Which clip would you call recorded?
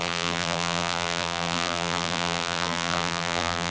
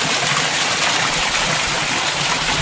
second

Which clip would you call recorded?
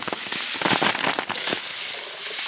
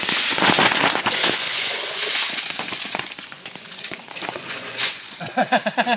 first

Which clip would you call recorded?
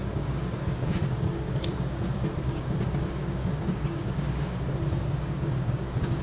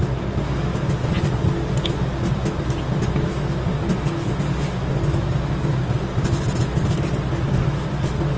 second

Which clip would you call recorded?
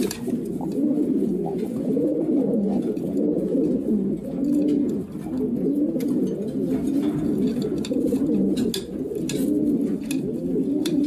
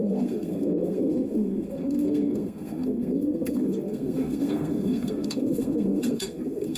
first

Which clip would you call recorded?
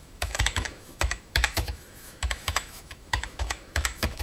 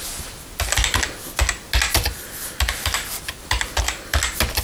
second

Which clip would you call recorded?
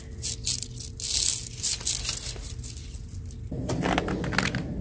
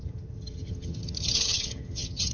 first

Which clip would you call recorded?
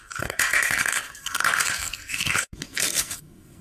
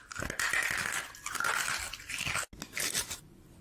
second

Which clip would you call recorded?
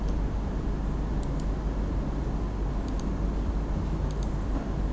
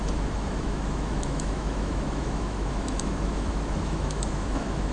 first